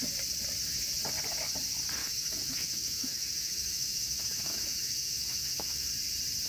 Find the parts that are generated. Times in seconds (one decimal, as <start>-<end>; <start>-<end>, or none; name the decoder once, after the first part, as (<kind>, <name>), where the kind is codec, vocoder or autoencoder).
2.0-5.9 (autoencoder, DAC-VAE)